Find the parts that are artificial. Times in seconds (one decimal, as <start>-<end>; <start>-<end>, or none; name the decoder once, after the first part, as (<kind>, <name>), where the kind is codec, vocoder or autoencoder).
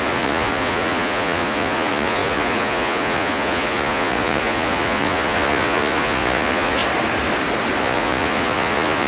0.0-6.8 (vocoder, Vocos); 7.8-9.1